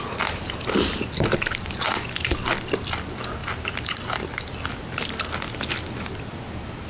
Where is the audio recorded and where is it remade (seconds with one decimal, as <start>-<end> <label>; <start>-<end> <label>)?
0.0-6.9 recorded